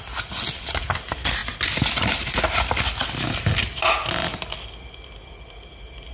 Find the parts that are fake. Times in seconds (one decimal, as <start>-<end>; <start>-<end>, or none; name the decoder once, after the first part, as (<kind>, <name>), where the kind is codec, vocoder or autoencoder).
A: none